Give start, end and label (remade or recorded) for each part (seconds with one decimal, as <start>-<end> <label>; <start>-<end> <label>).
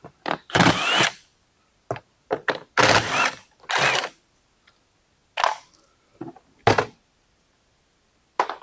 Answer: 0.0-8.6 recorded